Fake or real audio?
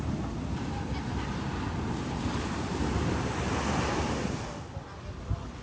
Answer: real